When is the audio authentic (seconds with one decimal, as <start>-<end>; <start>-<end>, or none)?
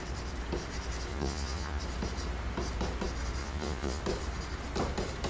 0.0-1.1; 1.8-3.4; 4.0-5.3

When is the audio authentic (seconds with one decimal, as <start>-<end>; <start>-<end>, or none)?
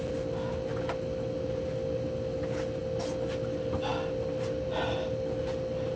0.0-6.0